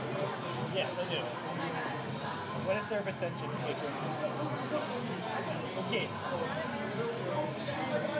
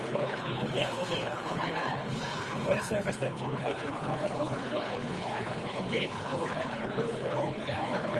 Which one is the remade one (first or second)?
second